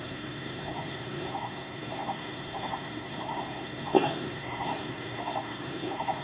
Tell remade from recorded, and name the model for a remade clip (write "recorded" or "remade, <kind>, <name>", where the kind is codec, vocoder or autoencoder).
remade, codec, SNAC